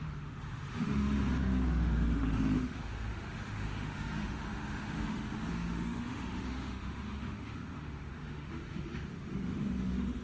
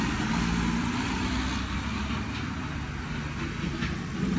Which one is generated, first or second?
first